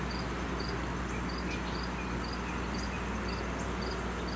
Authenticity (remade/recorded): recorded